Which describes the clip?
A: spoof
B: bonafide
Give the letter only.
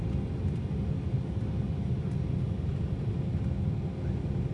B